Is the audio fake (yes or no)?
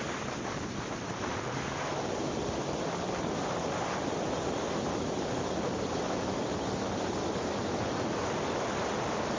no